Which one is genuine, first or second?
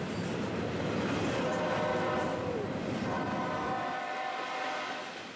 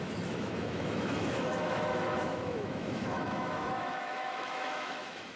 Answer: first